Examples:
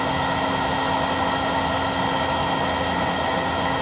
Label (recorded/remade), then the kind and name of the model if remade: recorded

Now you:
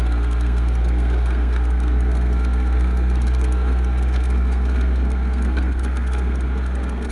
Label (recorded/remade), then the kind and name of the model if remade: remade, codec, SNAC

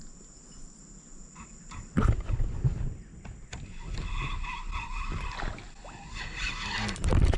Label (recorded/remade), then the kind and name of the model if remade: recorded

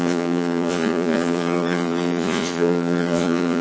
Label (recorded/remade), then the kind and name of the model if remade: remade, vocoder, Vocos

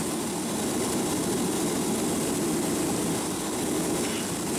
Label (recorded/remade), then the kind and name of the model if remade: recorded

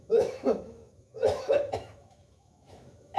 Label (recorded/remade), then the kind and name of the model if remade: remade, autoencoder, DAC-VAE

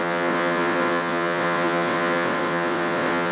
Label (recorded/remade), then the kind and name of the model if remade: remade, vocoder, WaveNeXt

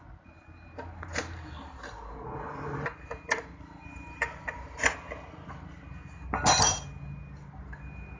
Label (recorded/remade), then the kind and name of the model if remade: recorded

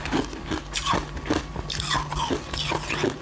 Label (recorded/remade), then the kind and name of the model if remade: recorded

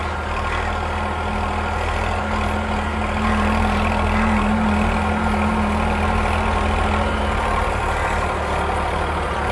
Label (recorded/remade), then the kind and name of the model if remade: recorded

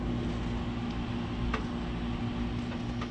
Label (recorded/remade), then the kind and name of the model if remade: recorded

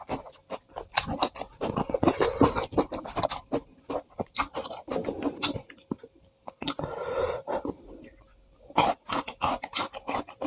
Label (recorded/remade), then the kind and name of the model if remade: recorded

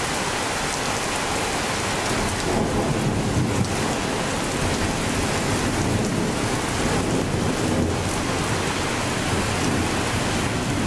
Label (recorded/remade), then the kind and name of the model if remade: recorded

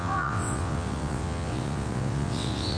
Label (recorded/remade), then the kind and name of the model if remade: remade, vocoder, WaveNeXt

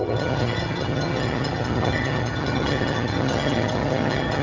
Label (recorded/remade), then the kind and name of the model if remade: remade, vocoder, HiFi-GAN